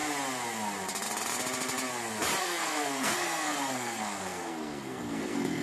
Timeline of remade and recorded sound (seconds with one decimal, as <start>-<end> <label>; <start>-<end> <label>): 0.0-2.4 recorded; 2.4-5.6 remade